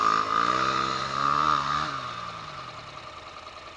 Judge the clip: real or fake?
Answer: real